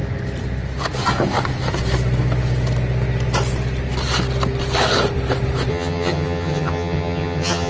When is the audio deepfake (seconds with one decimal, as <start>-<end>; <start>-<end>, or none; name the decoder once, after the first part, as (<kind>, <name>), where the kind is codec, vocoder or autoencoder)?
5.7-7.7 (vocoder, HiFi-GAN)